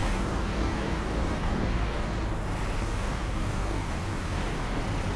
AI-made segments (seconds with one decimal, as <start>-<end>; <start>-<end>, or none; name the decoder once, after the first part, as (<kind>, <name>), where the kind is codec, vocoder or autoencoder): 0.0-2.1 (codec, DAC); 2.8-4.8